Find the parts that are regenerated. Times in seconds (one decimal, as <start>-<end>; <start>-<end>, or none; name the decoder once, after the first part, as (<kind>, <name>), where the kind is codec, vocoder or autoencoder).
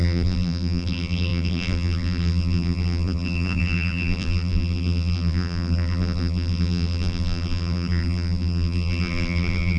0.0-9.8 (vocoder, BigVGAN v2)